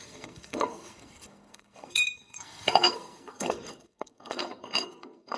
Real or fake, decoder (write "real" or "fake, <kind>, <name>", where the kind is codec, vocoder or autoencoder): fake, codec, SNAC